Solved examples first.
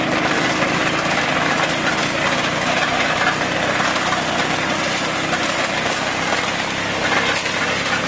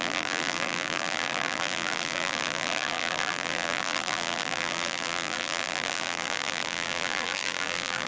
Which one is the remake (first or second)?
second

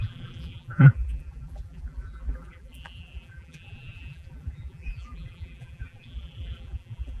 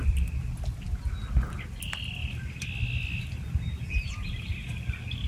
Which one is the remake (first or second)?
first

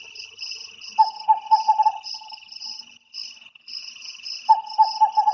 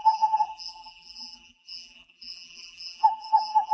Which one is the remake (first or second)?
second